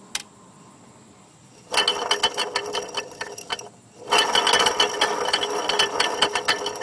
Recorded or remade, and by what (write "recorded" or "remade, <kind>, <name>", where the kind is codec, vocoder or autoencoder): recorded